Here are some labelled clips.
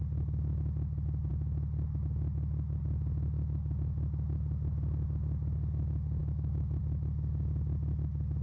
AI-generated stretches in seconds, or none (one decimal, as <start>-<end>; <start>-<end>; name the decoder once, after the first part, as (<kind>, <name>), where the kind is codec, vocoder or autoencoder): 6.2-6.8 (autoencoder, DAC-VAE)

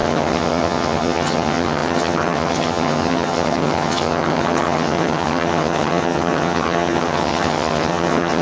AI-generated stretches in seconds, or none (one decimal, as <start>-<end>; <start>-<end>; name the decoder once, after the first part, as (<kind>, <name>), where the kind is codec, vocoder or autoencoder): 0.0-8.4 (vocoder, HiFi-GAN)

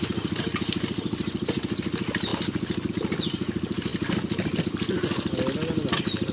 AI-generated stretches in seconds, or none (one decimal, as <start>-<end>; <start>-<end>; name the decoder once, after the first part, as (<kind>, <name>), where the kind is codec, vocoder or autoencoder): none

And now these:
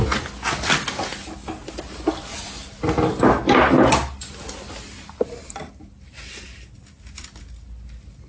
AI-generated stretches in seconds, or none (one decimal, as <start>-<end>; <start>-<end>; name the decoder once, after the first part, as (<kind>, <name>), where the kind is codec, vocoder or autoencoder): none